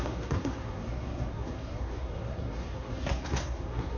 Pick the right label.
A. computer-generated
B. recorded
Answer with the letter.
A